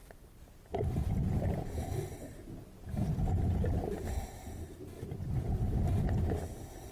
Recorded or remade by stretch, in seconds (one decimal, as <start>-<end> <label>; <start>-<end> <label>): 0.0-6.9 recorded